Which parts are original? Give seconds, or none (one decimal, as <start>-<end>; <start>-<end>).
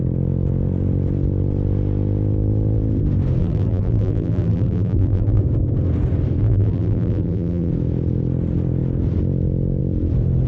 0.0-3.4; 5.4-6.4; 7.7-10.5